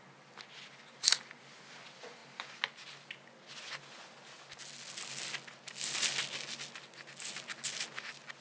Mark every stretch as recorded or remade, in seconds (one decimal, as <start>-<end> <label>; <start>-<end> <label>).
0.0-8.4 recorded